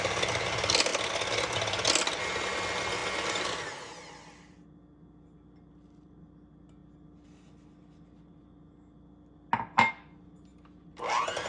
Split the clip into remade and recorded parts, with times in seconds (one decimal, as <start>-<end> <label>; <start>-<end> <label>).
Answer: 0.0-11.5 recorded